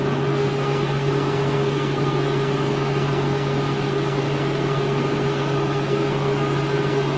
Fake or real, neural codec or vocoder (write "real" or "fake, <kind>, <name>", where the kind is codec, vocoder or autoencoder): fake, codec, SNAC